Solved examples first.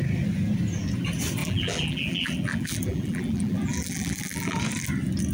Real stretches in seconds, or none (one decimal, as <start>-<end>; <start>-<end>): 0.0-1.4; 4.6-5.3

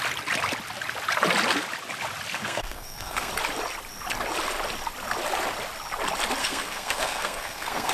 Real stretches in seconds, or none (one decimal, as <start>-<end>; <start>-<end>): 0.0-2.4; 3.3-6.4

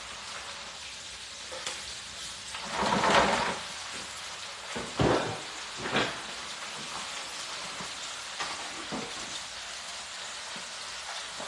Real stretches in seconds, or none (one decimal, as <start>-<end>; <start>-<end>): 0.0-11.5

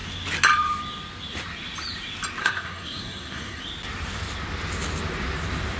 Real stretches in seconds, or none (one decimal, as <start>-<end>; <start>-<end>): 0.0-2.4; 3.6-5.8

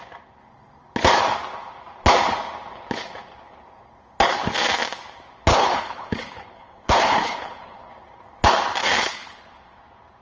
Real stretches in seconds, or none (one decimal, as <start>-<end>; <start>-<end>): 0.0-5.5; 7.9-8.8; 9.6-10.2

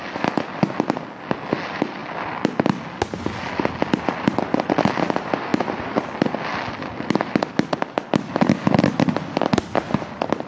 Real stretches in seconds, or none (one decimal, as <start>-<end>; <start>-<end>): 0.0-10.5